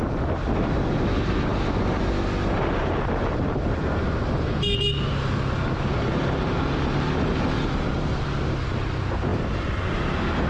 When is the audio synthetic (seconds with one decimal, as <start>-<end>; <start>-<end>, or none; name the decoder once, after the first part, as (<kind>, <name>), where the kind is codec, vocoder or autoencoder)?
none